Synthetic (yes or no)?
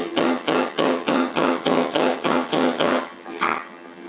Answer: yes